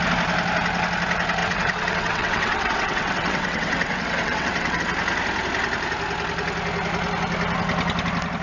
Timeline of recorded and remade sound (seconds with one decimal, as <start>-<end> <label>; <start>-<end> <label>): 0.0-1.4 recorded; 1.4-4.8 remade; 4.8-8.4 recorded

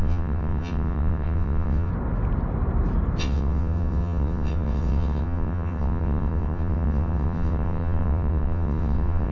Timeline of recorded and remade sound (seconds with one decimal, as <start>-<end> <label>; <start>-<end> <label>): 0.0-1.9 remade; 1.9-3.2 recorded; 3.2-9.3 remade

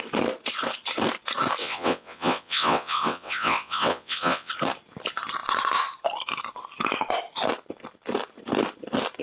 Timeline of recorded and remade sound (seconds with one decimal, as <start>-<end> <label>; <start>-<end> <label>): 0.0-1.6 recorded; 1.6-4.5 remade; 4.5-9.2 recorded

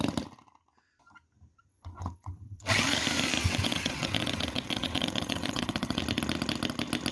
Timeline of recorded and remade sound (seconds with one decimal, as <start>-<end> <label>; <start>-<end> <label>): 0.0-1.7 recorded; 1.7-2.7 remade; 2.7-3.4 recorded; 3.4-6.0 remade; 6.0-7.1 recorded

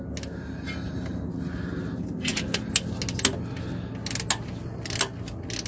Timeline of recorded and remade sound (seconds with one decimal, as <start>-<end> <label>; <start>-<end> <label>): 0.0-5.7 recorded

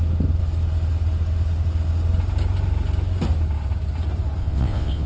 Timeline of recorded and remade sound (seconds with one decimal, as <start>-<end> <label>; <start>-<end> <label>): 0.0-4.4 recorded; 4.4-5.1 remade